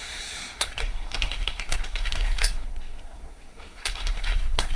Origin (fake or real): fake